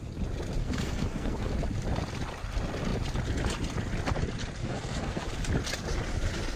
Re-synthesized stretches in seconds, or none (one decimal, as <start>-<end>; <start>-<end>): 0.6-1.5; 4.6-5.3